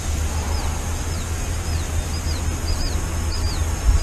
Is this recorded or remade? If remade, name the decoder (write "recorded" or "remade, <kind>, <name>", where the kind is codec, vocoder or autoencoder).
recorded